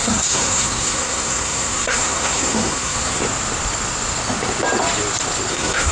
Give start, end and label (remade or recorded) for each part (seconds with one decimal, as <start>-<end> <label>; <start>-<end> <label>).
0.0-3.2 remade; 3.2-5.5 recorded; 5.5-5.9 remade